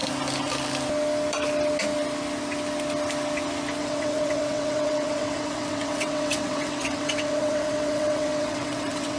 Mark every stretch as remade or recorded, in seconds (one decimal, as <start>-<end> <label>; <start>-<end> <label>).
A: 0.0-3.8 recorded; 3.8-9.2 remade